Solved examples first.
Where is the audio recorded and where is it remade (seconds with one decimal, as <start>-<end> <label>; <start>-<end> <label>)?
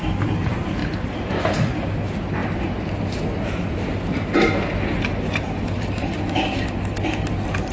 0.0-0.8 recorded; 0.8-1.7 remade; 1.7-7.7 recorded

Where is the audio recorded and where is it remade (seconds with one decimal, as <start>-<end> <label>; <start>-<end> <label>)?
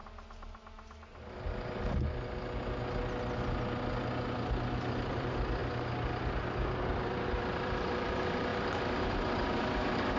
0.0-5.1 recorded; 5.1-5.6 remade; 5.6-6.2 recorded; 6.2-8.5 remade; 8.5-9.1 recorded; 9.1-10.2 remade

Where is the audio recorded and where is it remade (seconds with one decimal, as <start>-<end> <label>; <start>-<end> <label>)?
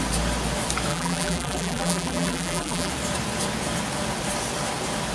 0.0-0.9 recorded; 0.9-2.9 remade; 2.9-5.1 recorded